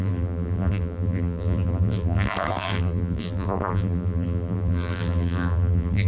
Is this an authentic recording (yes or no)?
no